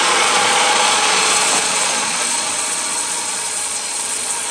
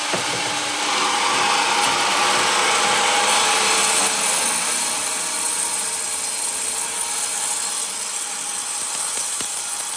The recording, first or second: second